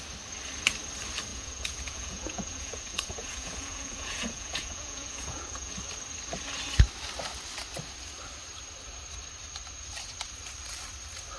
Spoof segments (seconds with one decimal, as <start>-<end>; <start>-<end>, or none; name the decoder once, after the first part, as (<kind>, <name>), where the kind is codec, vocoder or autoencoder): 1.3-5.7 (vocoder, Vocos)